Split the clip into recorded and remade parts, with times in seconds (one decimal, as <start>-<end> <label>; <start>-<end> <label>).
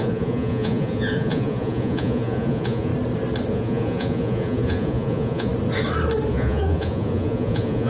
0.0-2.9 remade; 2.9-3.5 recorded; 3.5-5.5 remade; 5.5-6.3 recorded; 6.3-7.9 remade